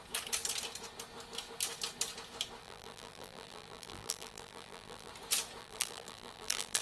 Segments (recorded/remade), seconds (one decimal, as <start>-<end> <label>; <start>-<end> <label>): 0.0-2.6 recorded; 2.6-5.1 remade; 5.1-5.6 recorded; 5.6-6.8 remade